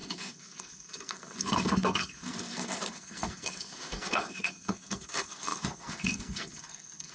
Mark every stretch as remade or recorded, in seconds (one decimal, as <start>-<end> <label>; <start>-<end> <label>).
0.0-7.1 remade